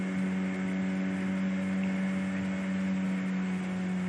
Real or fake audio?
real